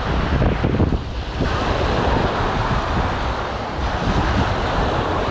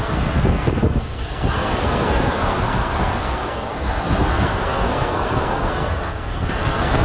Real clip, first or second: first